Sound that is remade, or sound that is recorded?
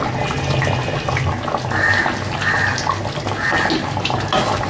recorded